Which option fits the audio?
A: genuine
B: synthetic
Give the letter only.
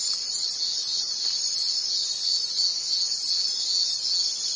A